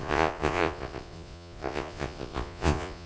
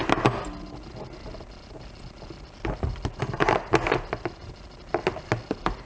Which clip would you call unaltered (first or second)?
second